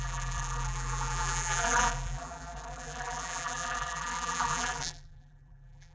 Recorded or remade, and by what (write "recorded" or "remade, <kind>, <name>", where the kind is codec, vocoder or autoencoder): remade, vocoder, BigVGAN v2